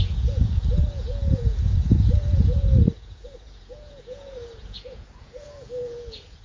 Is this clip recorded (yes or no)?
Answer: no